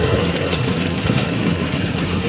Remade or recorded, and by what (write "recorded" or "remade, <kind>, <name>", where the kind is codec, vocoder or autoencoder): remade, codec, SNAC